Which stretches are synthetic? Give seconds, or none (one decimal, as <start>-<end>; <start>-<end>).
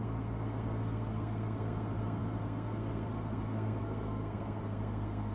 0.0-5.3